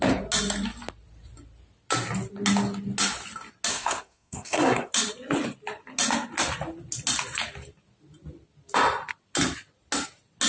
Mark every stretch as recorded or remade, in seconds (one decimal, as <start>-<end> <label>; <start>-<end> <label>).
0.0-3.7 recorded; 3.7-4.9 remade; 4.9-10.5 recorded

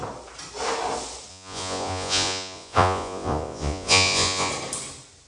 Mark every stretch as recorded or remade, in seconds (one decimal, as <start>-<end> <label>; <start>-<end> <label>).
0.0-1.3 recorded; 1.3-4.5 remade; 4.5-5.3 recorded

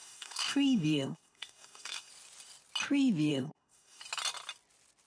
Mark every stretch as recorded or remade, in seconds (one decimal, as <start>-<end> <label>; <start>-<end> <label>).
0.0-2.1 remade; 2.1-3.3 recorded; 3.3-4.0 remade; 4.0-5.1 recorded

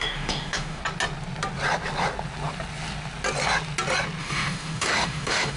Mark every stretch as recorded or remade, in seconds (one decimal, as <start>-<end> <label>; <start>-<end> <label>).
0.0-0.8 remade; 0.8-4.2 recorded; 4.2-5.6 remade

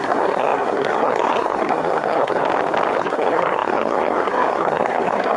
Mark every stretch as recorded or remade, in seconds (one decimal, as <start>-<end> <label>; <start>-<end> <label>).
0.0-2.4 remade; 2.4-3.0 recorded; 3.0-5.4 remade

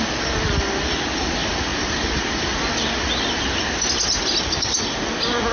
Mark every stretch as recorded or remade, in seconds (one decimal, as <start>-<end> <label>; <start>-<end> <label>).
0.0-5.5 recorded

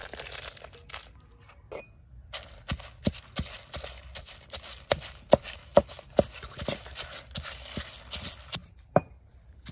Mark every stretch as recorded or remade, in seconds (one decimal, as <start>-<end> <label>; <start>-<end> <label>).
0.0-8.6 recorded; 8.6-9.7 remade